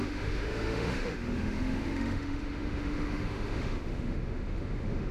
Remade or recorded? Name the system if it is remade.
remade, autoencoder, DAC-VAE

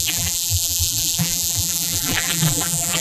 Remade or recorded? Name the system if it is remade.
remade, vocoder, BigVGAN v2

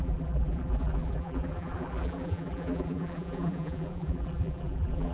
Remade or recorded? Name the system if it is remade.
remade, vocoder, BigVGAN v2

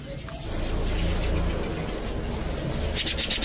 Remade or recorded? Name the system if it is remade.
recorded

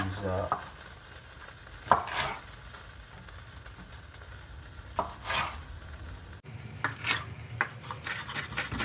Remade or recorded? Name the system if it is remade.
recorded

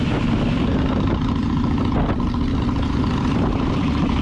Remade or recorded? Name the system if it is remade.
recorded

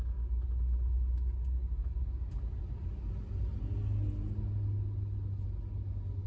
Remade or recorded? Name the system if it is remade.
recorded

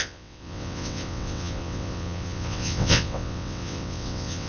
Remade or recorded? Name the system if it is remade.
remade, vocoder, WaveNeXt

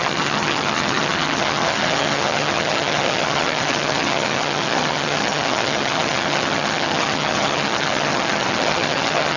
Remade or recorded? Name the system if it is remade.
remade, vocoder, HiFi-GAN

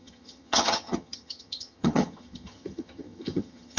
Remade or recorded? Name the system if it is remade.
remade, vocoder, HiFi-GAN